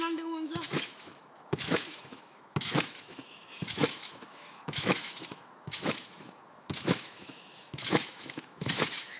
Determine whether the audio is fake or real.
fake